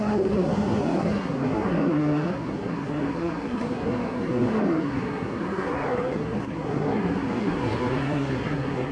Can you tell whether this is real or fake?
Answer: fake